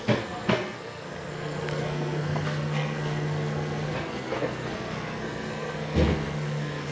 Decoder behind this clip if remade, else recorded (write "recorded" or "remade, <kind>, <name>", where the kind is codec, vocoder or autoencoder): remade, codec, SNAC